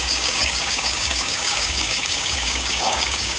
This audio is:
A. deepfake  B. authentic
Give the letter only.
A